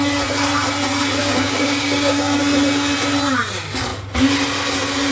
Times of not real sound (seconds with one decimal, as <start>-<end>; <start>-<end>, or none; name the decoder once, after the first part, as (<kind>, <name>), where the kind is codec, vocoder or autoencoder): 1.2-2.4 (codec, DAC)